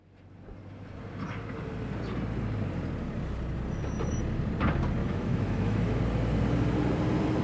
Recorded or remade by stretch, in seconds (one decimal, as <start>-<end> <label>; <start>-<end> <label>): 0.0-5.0 recorded; 5.0-6.0 remade; 6.0-7.4 recorded